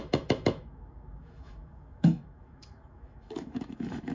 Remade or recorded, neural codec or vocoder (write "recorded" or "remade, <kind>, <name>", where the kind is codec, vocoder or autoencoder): remade, autoencoder, DAC-VAE